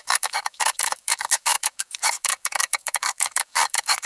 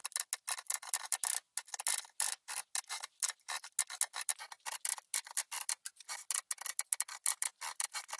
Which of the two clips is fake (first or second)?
first